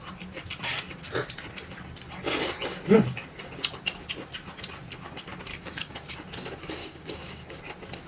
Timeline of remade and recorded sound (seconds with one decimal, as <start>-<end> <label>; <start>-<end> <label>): 0.0-5.5 recorded; 5.5-6.1 remade; 6.1-6.8 recorded; 6.8-7.6 remade; 7.6-8.1 recorded